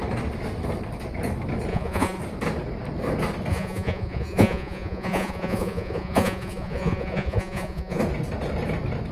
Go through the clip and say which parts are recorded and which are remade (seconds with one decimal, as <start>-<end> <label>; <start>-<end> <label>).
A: 0.0-1.7 recorded; 1.7-2.2 remade; 2.2-3.5 recorded; 3.5-8.0 remade; 8.0-9.1 recorded